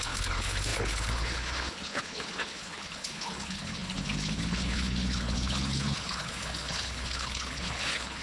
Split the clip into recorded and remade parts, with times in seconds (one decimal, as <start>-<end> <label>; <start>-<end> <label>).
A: 0.0-8.2 remade